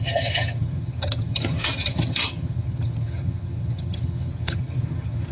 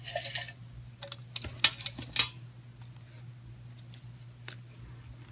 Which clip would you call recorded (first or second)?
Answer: second